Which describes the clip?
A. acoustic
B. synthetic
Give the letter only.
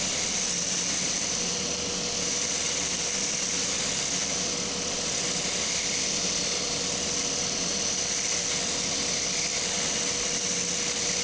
A